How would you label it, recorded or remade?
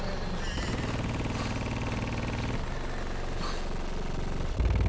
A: recorded